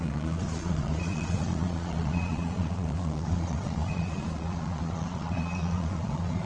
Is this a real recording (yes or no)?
no